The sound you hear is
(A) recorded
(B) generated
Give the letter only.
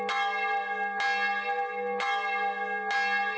A